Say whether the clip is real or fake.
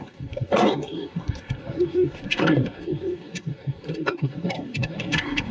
fake